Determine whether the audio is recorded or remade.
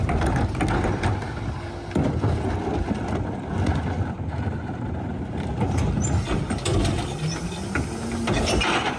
recorded